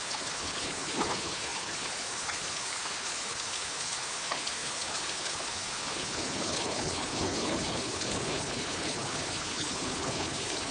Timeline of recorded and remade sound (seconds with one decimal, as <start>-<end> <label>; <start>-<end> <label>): 0.0-10.7 remade